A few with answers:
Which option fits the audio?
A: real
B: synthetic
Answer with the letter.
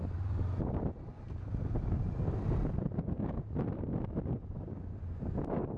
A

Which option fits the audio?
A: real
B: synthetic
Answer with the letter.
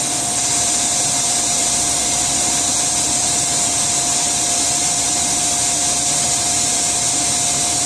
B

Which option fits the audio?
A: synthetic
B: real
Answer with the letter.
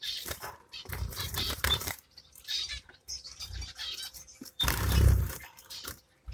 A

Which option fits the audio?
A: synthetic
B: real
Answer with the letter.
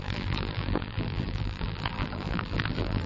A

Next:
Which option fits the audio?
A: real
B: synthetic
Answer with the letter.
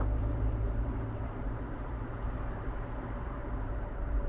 B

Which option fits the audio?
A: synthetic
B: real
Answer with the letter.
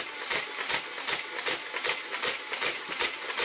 B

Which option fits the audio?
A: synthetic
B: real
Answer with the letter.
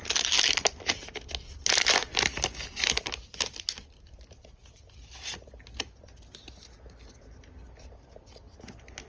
B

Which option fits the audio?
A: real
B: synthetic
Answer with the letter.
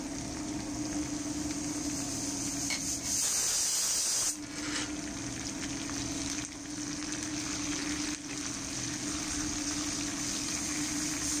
A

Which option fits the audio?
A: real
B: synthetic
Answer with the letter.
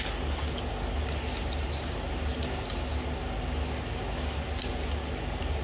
A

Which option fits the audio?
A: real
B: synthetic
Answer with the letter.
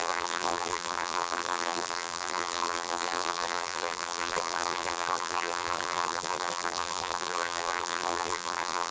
B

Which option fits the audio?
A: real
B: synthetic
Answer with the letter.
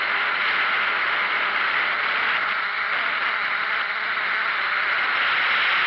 A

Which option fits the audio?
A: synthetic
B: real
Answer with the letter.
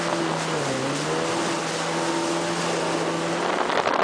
B